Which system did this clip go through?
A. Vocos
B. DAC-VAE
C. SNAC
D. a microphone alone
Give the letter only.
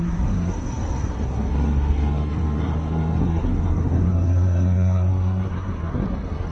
C